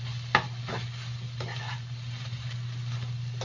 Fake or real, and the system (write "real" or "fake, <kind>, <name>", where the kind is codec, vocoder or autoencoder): real